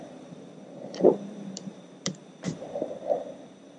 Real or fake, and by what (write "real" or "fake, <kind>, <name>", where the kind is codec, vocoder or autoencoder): fake, vocoder, BigVGAN v2